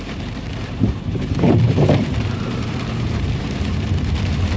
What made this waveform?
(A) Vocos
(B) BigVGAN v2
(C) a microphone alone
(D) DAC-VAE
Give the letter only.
B